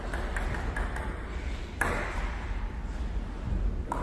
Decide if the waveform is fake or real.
real